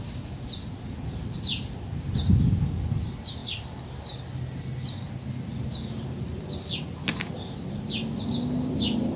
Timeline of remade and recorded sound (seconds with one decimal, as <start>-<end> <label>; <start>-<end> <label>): 0.0-9.2 recorded